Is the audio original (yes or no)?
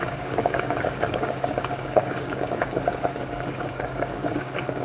no